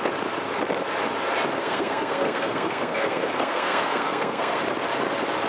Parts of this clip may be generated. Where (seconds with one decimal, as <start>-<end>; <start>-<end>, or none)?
1.6-4.6